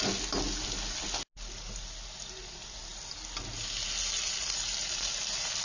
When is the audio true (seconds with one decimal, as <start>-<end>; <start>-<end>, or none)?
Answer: 0.0-5.6